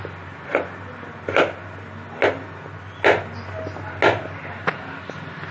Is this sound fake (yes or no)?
no